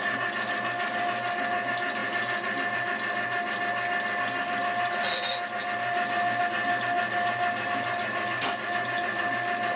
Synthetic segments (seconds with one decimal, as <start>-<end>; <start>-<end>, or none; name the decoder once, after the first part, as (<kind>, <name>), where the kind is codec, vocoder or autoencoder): none